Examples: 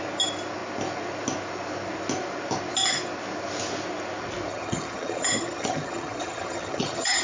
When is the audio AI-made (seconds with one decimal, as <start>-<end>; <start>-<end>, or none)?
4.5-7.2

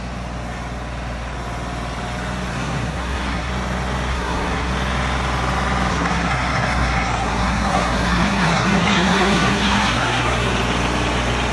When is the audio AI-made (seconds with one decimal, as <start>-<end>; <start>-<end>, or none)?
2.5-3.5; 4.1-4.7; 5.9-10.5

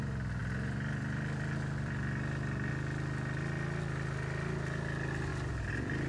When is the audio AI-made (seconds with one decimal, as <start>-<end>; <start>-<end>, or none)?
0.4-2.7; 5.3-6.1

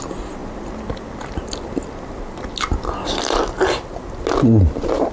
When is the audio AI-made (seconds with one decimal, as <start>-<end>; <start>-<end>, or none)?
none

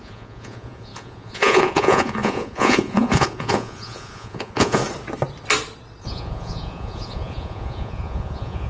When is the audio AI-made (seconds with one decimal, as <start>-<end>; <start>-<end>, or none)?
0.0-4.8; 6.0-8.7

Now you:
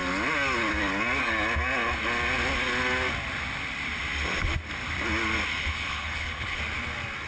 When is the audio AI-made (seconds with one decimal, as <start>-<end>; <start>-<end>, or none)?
5.5-6.6